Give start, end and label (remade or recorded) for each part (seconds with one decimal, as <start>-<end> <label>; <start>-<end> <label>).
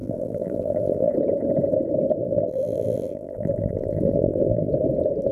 0.0-1.1 remade; 1.1-2.2 recorded; 2.2-4.7 remade; 4.7-5.3 recorded